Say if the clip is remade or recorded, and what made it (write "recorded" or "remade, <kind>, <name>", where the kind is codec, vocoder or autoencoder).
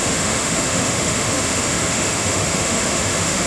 remade, autoencoder, DAC-VAE